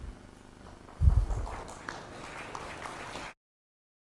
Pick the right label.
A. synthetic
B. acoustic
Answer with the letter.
B